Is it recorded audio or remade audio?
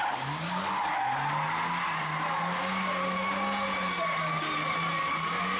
recorded